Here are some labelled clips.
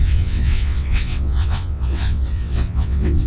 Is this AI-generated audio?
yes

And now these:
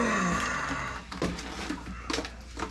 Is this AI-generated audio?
no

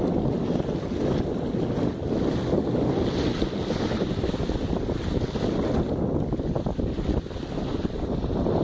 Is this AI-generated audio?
no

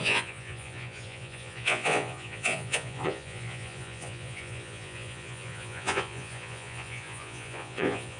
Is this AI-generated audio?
yes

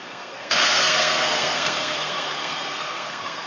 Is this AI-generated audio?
yes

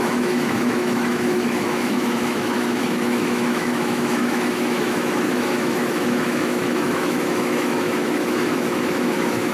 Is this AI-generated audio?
yes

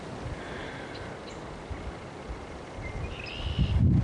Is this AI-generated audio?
no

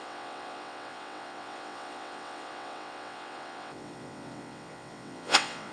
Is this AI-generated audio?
yes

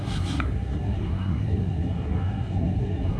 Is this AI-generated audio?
yes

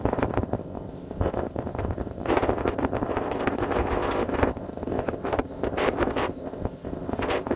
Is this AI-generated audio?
yes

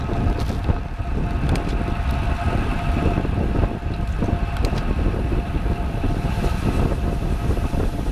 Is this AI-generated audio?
no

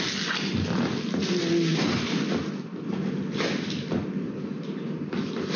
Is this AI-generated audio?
no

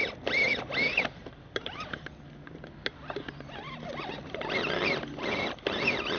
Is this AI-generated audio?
no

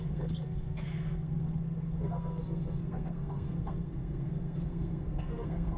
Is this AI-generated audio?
yes